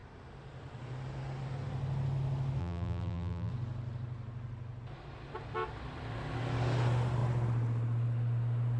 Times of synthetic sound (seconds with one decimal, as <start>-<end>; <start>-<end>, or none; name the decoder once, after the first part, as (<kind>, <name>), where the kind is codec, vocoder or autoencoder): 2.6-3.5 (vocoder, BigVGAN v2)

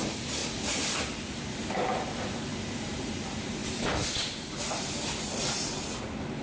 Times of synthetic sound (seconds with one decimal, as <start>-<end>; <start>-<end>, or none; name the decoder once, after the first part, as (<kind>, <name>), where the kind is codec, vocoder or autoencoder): 1.5-2.0 (vocoder, BigVGAN v2)

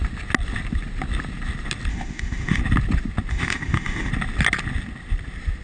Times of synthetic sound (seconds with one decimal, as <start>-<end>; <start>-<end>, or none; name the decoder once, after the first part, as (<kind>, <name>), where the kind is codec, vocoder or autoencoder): 1.9-2.6 (autoencoder, DAC-VAE); 3.3-4.1